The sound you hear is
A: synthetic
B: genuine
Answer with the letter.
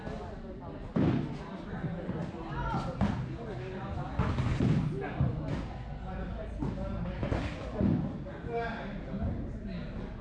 B